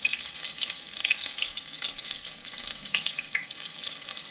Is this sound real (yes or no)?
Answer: no